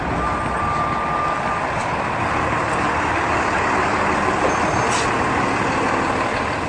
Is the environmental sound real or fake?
real